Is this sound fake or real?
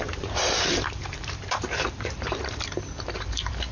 fake